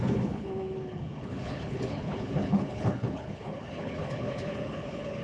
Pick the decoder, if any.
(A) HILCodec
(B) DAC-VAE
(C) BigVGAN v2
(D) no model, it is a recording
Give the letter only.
A